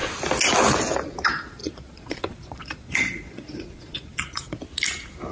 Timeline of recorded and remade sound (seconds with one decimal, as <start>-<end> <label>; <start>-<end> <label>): 0.0-1.6 recorded; 1.6-4.6 remade; 4.6-5.3 recorded